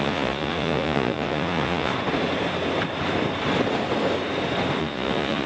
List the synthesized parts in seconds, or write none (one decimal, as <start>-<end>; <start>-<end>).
0.0-1.9; 4.8-5.5